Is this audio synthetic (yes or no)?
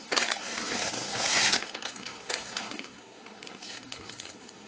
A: yes